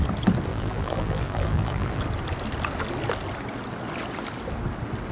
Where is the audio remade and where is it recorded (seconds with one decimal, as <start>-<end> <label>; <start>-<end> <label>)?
0.0-0.5 recorded; 0.5-2.0 remade; 2.0-5.1 recorded